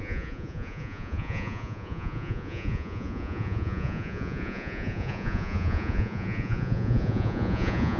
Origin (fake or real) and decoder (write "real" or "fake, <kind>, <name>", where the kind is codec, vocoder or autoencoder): fake, vocoder, Vocos